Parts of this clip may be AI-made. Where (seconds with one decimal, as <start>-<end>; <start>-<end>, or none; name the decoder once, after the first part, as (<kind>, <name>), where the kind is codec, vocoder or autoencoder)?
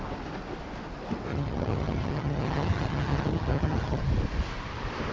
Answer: 1.3-4.0 (vocoder, HiFi-GAN)